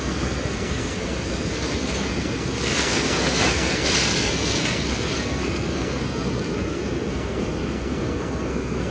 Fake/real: fake